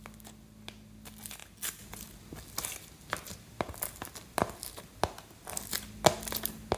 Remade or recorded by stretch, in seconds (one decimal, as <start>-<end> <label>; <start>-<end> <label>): 0.0-6.8 recorded